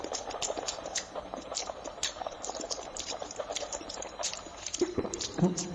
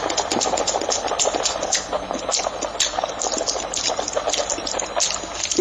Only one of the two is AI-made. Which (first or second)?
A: first